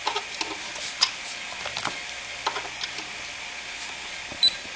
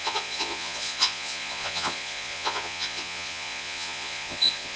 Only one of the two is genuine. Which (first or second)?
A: first